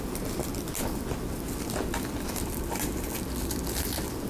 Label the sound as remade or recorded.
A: recorded